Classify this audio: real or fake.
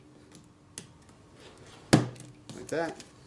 real